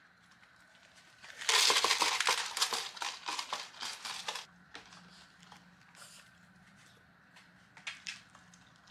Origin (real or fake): real